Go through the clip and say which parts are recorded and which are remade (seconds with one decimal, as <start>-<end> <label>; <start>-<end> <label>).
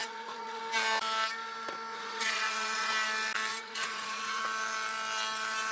0.0-0.6 remade; 0.6-1.9 recorded; 1.9-2.9 remade; 2.9-3.5 recorded; 3.5-4.4 remade; 4.4-5.7 recorded